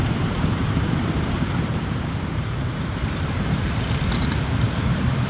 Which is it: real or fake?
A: fake